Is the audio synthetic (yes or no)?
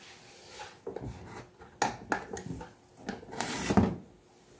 no